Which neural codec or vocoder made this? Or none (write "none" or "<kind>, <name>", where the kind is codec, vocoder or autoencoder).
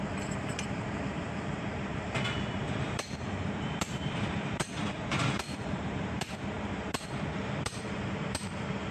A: vocoder, BigVGAN v2